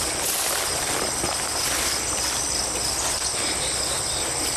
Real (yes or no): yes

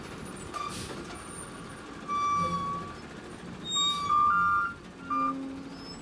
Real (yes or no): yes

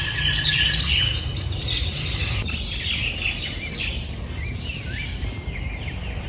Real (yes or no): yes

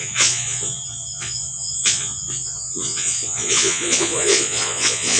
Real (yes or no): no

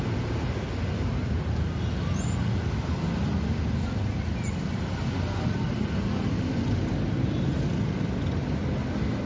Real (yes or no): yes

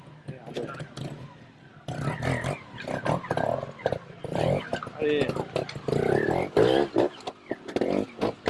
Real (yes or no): yes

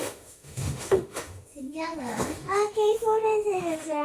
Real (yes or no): no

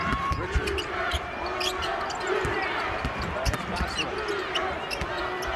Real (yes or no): no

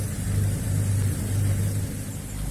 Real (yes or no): yes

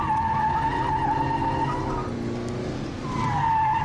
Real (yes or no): yes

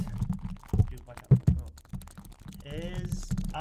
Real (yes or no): yes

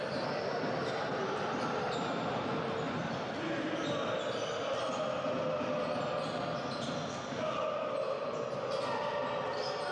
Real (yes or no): yes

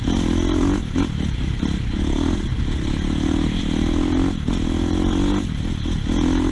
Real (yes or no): yes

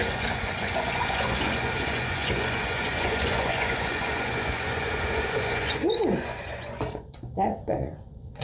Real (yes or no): no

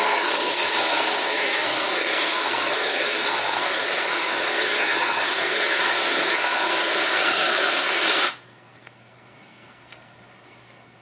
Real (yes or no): no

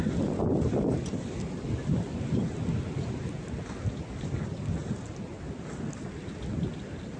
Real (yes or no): yes